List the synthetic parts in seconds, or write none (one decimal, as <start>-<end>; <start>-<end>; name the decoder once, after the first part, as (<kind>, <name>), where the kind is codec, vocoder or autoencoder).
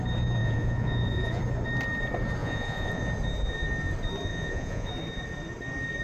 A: 0.4-1.4 (vocoder, Vocos); 2.4-3.0; 4.3-4.9